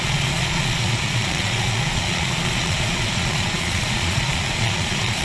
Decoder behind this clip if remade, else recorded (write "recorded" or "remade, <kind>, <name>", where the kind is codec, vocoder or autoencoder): remade, vocoder, Vocos